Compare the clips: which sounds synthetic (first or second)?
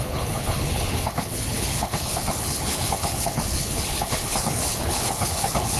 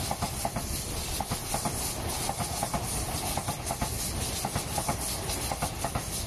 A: first